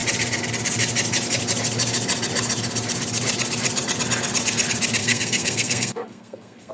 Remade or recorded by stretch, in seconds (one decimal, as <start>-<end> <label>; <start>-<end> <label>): 0.0-5.0 recorded; 5.0-6.7 remade